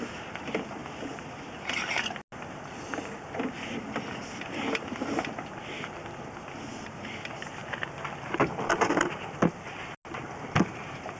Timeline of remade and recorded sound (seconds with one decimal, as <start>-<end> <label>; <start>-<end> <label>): 0.0-11.2 recorded